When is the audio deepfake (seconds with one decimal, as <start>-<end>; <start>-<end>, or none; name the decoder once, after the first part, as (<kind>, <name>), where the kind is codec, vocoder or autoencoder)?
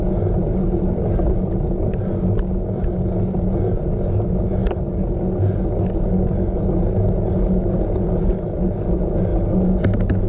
none